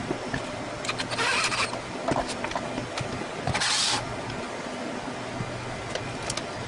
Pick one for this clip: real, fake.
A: real